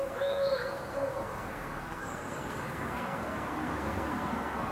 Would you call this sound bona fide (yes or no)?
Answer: no